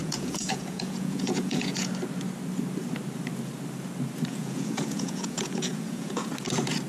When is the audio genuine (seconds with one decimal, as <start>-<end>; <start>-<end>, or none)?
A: 1.9-4.3; 6.3-6.9